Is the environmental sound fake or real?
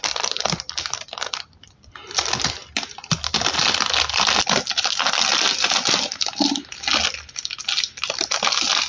real